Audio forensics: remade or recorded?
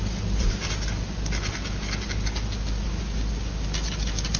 recorded